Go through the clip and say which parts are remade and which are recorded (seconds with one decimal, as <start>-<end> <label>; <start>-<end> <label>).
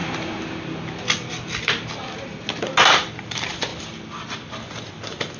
0.0-3.1 recorded; 3.1-5.4 remade